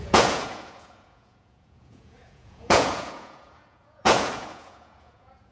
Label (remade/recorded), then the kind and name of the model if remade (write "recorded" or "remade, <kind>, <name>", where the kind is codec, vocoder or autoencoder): remade, vocoder, Vocos